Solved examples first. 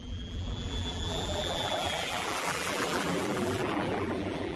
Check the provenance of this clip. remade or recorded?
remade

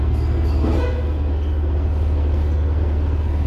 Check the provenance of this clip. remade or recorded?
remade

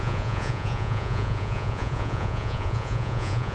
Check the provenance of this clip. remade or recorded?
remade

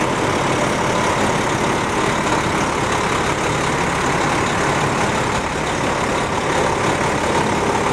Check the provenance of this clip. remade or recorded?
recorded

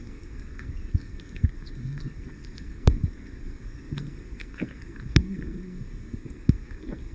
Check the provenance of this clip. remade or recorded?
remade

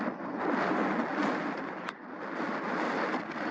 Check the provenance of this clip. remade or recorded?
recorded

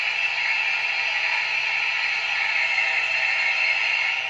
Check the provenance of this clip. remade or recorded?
recorded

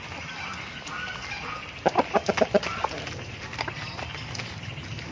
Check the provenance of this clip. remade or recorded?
recorded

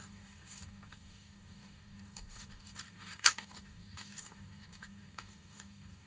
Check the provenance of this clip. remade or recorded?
remade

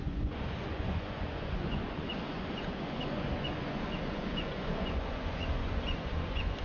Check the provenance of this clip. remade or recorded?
remade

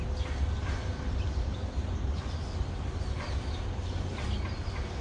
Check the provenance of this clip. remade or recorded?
recorded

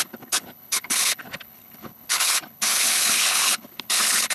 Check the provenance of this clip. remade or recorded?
remade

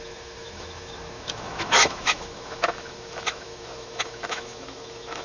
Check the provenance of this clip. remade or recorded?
remade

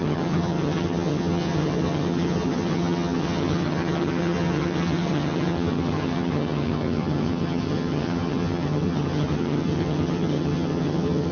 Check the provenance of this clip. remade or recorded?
remade